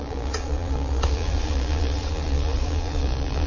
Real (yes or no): no